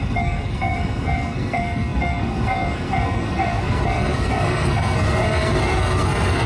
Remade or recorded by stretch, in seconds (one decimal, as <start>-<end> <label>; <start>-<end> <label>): 0.0-6.5 remade